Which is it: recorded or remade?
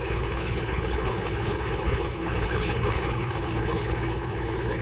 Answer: remade